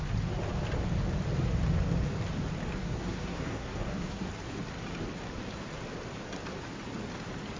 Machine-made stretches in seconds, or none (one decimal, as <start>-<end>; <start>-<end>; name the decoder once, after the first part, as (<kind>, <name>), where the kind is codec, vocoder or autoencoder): 2.8-4.3 (codec, SNAC)